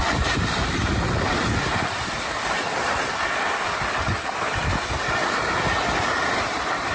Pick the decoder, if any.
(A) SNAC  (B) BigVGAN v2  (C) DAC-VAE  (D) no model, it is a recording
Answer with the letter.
D